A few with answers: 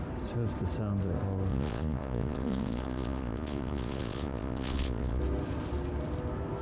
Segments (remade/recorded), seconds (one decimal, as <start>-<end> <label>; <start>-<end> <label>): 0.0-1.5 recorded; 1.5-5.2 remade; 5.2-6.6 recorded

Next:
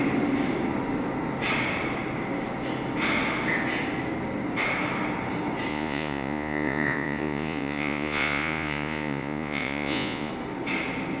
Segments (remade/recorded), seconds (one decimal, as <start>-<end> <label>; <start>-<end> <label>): 0.0-5.7 recorded; 5.7-10.3 remade; 10.3-11.2 recorded

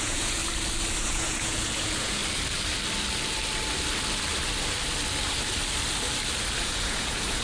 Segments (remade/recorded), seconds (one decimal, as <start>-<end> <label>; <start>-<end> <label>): 0.0-0.4 remade; 0.4-1.0 recorded; 1.0-2.2 remade; 2.2-6.6 recorded; 6.6-7.4 remade

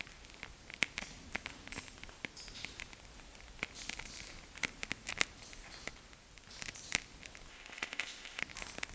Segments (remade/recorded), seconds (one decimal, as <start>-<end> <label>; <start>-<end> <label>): 0.0-7.5 recorded; 7.5-8.4 remade; 8.4-8.9 recorded

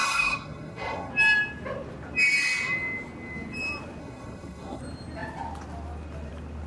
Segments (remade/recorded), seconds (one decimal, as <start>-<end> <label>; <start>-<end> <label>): 0.0-1.1 remade; 1.1-4.0 recorded; 4.0-4.8 remade; 4.8-6.7 recorded